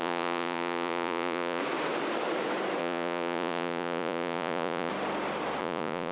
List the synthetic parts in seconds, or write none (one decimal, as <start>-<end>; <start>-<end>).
0.0-1.6; 2.8-4.9; 5.6-6.1